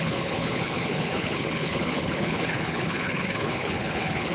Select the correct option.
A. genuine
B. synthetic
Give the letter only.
B